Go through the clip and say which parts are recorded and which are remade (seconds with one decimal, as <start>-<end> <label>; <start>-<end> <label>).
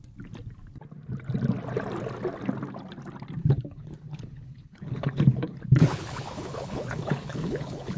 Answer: 0.0-3.4 recorded; 3.4-8.0 remade